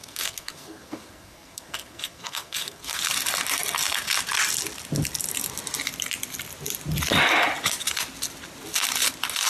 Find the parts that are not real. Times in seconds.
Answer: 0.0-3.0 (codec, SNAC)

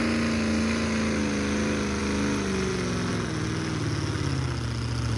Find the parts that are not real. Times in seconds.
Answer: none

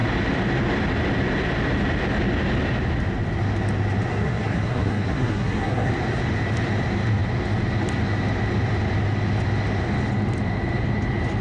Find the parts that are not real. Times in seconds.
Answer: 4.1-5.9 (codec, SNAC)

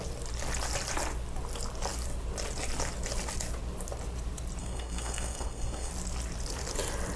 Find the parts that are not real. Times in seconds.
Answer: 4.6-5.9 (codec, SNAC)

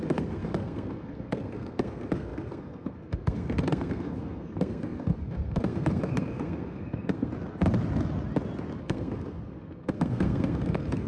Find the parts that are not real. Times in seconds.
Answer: 0.0-7.3 (codec, SNAC); 8.8-11.1